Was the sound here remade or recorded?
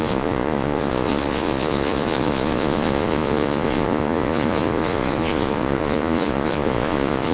remade